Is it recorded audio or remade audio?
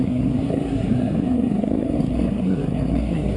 remade